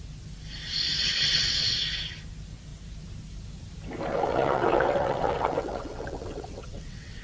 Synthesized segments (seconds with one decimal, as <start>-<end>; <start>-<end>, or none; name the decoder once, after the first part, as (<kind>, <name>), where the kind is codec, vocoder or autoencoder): 0.9-1.8 (vocoder, WaveNeXt); 4.1-7.2